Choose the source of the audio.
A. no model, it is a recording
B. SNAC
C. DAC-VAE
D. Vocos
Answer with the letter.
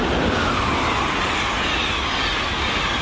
A